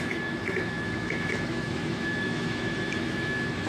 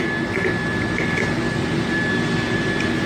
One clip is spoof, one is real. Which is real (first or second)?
second